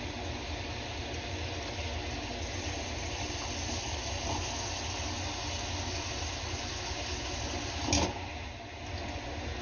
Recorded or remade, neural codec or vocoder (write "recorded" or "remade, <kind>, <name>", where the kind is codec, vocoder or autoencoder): recorded